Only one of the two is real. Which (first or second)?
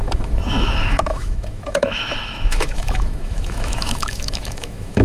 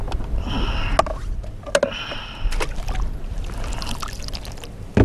second